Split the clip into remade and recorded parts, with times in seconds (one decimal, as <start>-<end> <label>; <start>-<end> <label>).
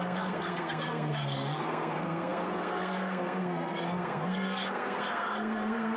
0.0-6.0 remade